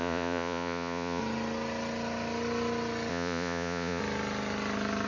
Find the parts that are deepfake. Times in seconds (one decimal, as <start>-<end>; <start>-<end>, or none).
0.0-1.2; 3.1-4.0